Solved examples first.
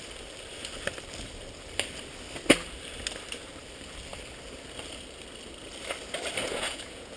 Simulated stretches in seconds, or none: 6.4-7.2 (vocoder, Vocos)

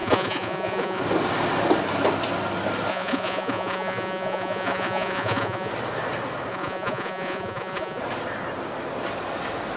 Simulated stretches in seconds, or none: 0.0-1.0 (vocoder, Vocos); 2.9-5.7; 6.5-8.0

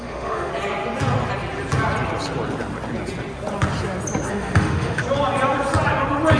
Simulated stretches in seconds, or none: 0.0-0.5 (autoencoder, DAC-VAE); 4.3-5.0

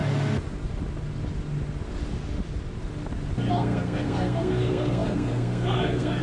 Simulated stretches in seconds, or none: 3.5-6.2 (codec, SNAC)

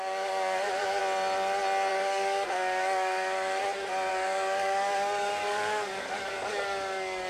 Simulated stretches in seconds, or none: 0.0-1.0 (codec, DAC); 1.9-3.6; 4.1-7.3

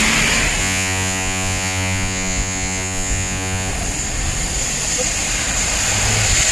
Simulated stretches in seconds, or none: 0.6-3.7 (vocoder, Vocos)